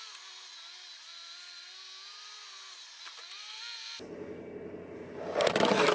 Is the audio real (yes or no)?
yes